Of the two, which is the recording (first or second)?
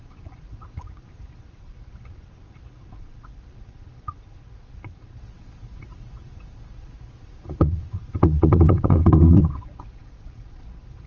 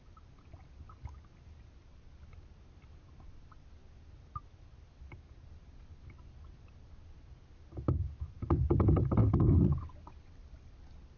second